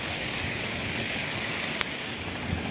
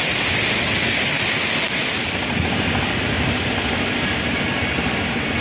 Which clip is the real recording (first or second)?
second